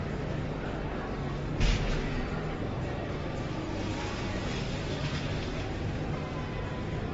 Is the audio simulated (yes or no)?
no